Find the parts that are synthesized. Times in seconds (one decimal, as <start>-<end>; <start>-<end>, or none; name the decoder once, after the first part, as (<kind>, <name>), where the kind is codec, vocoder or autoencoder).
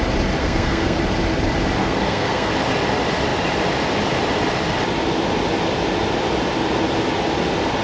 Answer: 0.4-1.0 (codec, SNAC); 1.8-2.5